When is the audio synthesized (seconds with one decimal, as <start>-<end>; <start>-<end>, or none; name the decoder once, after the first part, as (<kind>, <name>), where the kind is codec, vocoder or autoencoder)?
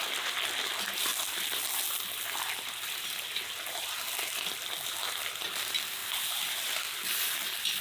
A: none